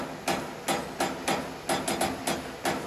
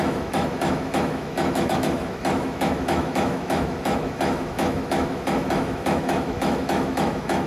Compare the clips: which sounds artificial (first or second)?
second